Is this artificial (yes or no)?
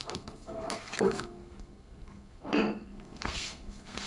yes